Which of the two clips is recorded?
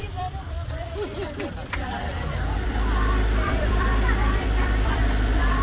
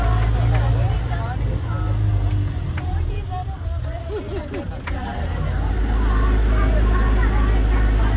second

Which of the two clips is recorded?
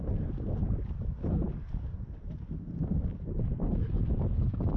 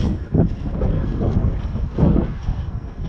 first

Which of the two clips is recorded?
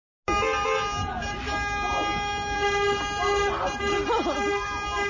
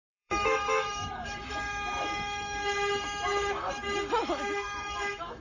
first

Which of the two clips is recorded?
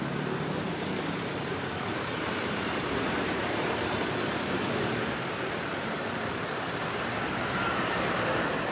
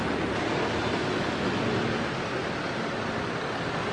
second